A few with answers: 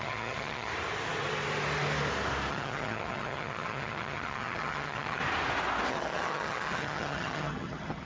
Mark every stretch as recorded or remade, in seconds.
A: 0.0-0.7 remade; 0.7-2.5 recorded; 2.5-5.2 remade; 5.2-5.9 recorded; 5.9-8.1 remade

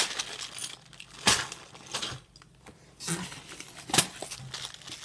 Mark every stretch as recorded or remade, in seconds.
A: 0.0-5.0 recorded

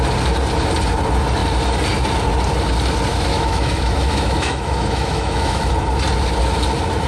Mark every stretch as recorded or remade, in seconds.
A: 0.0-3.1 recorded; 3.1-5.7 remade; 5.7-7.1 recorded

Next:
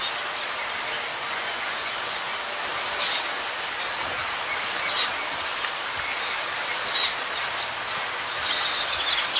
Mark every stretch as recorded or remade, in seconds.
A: 0.0-1.1 recorded; 1.1-2.3 remade; 2.3-9.4 recorded

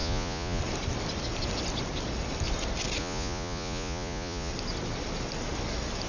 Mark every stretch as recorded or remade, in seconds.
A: 0.0-0.6 remade; 0.6-3.0 recorded; 3.0-4.5 remade; 4.5-6.1 recorded

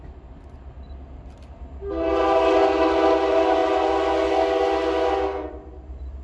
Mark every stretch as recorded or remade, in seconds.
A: 0.0-6.2 recorded

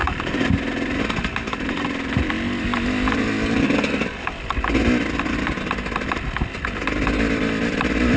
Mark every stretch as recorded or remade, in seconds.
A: 0.0-0.5 remade; 0.5-8.2 recorded